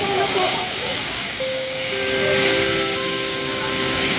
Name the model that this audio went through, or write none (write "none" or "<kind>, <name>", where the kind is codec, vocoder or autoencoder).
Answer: codec, DAC